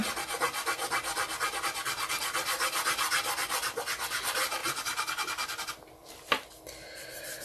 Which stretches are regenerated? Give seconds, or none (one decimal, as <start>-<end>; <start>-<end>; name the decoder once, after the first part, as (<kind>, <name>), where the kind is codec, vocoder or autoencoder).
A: none